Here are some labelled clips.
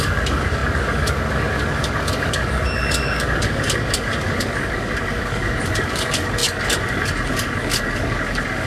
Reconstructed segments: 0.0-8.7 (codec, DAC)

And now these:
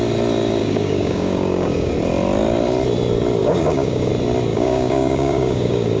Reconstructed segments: 0.6-1.9 (codec, DAC); 3.4-4.1; 4.5-6.0